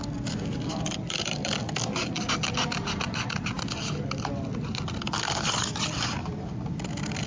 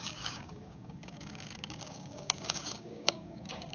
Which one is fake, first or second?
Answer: second